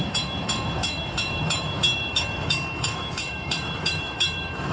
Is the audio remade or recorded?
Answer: remade